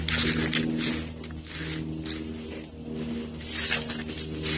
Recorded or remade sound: recorded